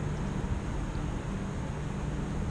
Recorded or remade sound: recorded